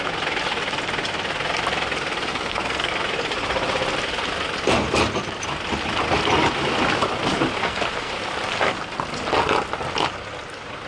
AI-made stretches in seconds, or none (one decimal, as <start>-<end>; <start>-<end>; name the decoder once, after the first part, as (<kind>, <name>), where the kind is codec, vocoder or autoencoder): 2.3-2.9 (codec, SNAC); 7.6-8.1

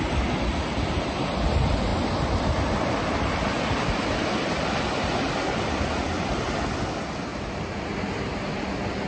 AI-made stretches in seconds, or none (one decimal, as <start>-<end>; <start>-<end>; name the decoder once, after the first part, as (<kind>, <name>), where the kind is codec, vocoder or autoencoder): none

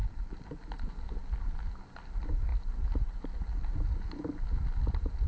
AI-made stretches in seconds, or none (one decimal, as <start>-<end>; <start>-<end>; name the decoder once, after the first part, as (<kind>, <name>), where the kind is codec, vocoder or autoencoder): none